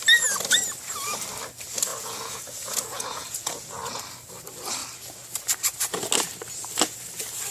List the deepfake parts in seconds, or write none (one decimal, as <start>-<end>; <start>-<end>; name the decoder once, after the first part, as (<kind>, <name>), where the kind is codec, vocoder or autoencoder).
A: 1.9-4.0 (vocoder, Vocos)

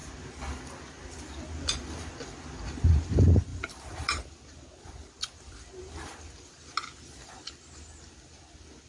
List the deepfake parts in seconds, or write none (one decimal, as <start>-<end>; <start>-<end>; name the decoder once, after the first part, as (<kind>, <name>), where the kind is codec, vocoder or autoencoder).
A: none

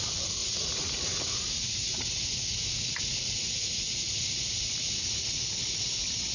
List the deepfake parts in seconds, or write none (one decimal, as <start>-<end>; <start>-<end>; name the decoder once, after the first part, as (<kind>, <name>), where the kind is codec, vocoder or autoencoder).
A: 0.4-4.2 (vocoder, Vocos); 4.8-5.4

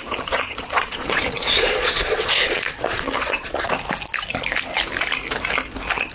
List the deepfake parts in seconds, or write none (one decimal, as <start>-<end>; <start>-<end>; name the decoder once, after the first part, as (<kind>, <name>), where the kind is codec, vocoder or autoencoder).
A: 0.0-3.7 (vocoder, Vocos)

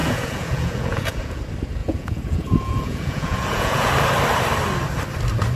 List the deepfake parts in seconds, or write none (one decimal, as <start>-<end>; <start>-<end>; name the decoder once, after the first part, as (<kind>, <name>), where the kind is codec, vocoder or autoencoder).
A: 0.0-1.4 (vocoder, Vocos); 1.8-3.9